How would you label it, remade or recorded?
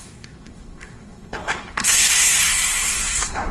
remade